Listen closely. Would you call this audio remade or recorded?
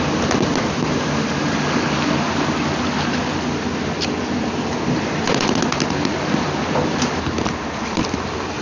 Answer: recorded